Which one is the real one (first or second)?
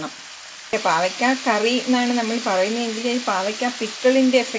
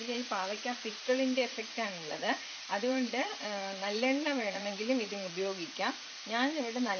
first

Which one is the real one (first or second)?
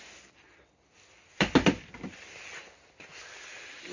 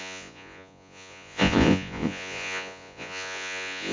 first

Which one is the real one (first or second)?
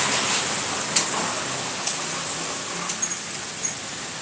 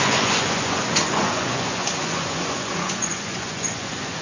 first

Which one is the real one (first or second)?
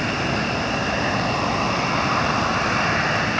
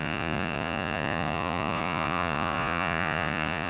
first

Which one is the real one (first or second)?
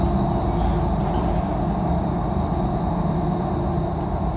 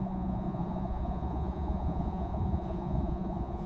first